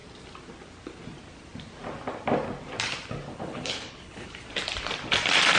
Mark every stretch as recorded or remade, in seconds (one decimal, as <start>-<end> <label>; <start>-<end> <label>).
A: 0.0-3.3 recorded; 3.3-4.3 remade; 4.3-5.6 recorded

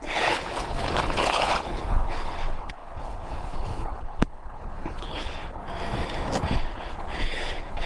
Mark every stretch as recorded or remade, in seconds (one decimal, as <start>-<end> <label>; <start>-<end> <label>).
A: 0.0-5.6 remade; 5.6-6.6 recorded; 6.6-7.9 remade

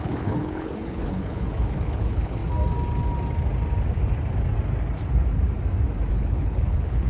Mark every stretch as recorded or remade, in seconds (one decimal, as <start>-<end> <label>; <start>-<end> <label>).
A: 0.0-2.4 remade; 2.4-6.1 recorded; 6.1-7.1 remade

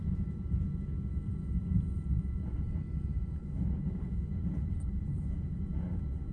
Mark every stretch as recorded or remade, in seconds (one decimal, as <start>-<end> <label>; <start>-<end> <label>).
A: 0.0-3.4 recorded; 3.4-5.6 remade; 5.6-6.3 recorded

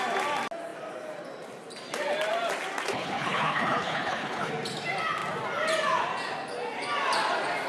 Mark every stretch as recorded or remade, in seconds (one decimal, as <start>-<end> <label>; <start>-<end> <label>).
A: 0.0-2.9 recorded; 2.9-4.5 remade; 4.5-7.7 recorded